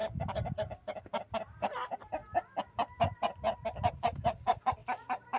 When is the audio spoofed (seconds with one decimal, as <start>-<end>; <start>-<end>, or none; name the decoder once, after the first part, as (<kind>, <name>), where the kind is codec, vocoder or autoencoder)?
0.0-2.2 (vocoder, BigVGAN v2); 3.9-5.4